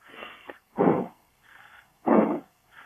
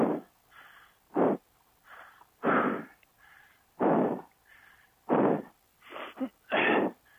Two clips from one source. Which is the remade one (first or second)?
first